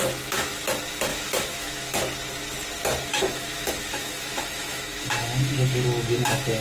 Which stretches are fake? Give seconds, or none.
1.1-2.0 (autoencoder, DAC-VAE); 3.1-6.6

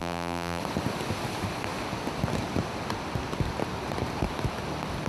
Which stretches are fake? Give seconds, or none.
0.0-0.6 (vocoder, BigVGAN v2)

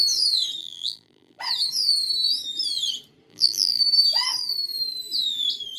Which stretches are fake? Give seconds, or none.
0.6-1.4 (vocoder, BigVGAN v2); 3.3-3.8

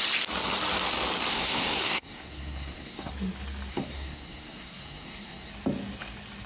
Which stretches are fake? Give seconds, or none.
1.3-3.1 (codec, SNAC); 3.7-5.5

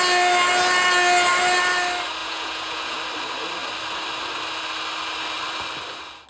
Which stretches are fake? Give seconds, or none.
2.2-3.0 (vocoder, Vocos)

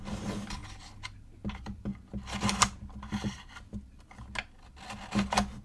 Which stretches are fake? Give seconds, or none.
0.0-0.6 (vocoder, BigVGAN v2); 1.5-1.9